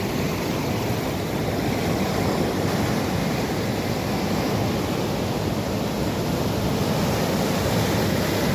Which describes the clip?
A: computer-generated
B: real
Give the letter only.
B